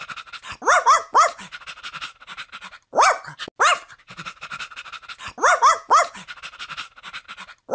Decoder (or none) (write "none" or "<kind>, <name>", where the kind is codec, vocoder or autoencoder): none